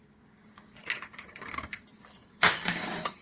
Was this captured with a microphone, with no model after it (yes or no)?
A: no